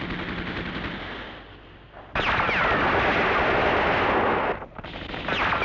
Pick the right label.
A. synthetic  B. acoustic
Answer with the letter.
B